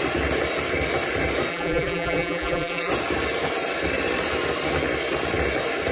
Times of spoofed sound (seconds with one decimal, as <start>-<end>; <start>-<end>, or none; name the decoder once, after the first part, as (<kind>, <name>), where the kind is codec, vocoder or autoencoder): 1.5-2.9 (vocoder, BigVGAN v2)